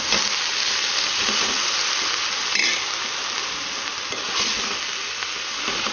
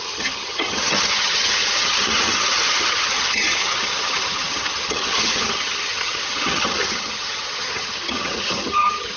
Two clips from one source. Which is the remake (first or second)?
second